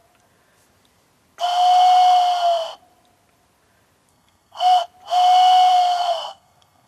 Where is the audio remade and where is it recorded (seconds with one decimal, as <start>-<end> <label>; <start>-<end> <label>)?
0.0-4.1 recorded; 4.1-4.8 remade; 4.8-5.7 recorded; 5.7-6.9 remade